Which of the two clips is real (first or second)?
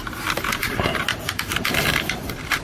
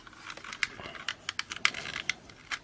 second